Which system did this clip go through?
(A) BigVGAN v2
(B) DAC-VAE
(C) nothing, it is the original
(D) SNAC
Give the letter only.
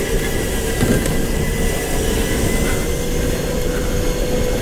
C